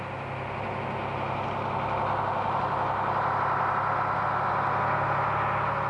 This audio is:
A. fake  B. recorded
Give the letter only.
B